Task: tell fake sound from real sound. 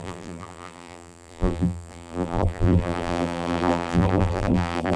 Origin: fake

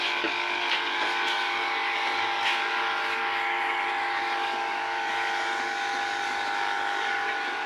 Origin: fake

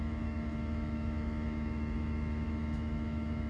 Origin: fake